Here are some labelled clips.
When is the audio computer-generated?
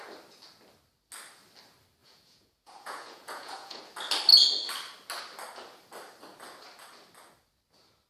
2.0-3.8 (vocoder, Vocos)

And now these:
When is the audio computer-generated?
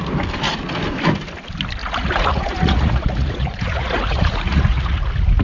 1.8-5.0 (vocoder, Vocos)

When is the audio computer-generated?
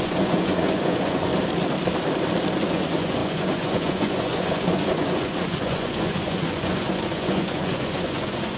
0.0-1.3 (vocoder, Vocos); 2.7-8.6